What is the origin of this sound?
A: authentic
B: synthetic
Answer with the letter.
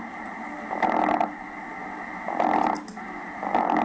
A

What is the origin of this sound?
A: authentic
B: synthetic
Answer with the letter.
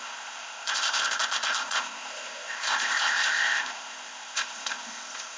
B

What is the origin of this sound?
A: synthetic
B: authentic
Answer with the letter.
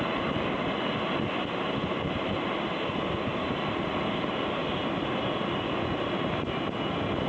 B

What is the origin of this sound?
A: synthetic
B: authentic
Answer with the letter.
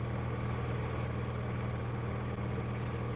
B